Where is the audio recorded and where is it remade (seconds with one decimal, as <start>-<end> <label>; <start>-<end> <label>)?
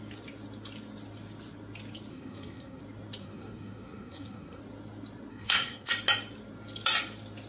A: 0.0-2.1 recorded; 2.1-2.8 remade; 2.8-3.2 recorded; 3.2-4.6 remade; 4.6-5.3 recorded; 5.3-5.9 remade; 5.9-7.5 recorded